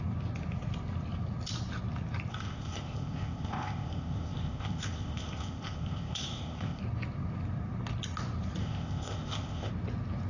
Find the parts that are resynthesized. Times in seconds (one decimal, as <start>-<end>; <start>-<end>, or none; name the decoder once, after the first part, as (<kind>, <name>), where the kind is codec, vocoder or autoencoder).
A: 2.3-6.8 (codec, ZipCodec); 8.6-9.7